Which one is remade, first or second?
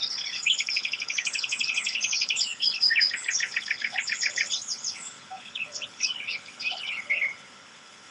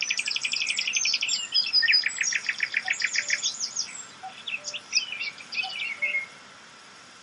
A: first